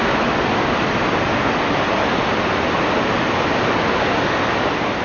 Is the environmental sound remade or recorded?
recorded